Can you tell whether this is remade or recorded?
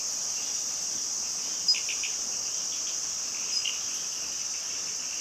recorded